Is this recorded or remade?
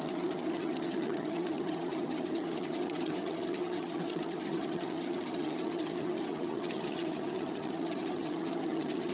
remade